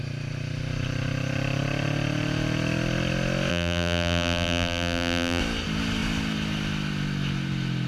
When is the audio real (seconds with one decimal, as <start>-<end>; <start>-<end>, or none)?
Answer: 0.0-3.5; 5.4-7.9